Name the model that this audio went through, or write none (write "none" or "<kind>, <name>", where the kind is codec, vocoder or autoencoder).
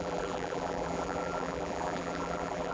vocoder, BigVGAN v2